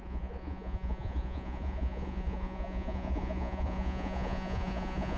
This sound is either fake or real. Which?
fake